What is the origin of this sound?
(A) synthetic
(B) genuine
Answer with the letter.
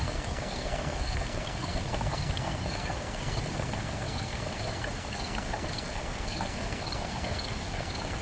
A